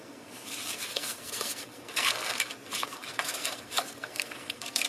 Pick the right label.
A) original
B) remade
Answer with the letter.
B